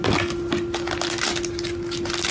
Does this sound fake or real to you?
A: real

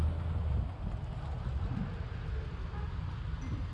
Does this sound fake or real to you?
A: real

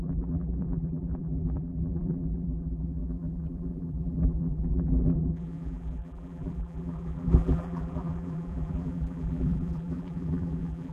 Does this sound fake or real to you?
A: fake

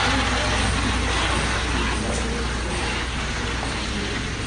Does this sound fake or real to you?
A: real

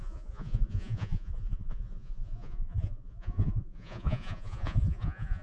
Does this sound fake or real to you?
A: fake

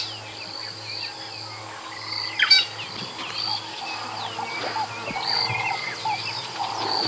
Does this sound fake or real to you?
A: real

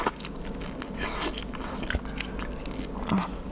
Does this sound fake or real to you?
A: real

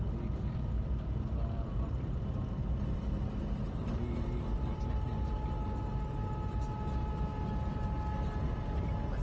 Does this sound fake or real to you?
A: real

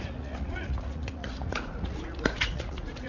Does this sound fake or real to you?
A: fake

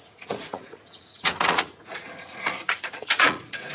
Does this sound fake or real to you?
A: fake